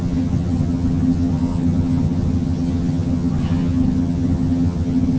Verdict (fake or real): fake